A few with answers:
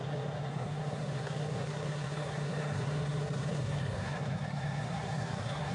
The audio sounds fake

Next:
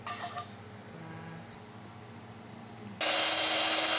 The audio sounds real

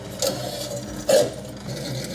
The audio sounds real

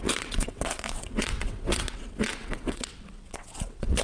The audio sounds fake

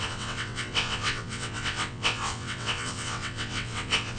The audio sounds fake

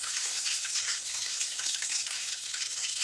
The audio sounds fake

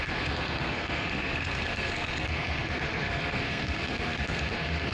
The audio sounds fake